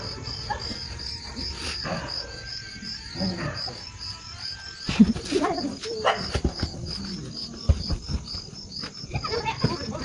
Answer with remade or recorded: recorded